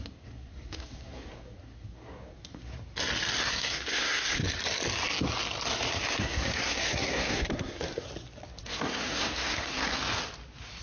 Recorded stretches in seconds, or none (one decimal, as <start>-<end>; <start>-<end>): 2.7-3.4; 4.4-6.2; 8.1-8.6; 9.9-10.8